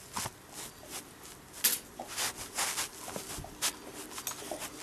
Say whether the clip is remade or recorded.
recorded